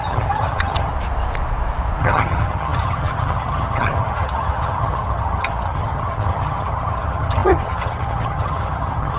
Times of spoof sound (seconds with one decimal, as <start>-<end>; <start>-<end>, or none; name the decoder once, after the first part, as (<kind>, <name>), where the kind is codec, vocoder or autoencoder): 0.0-0.9 (vocoder, HiFi-GAN); 2.0-9.2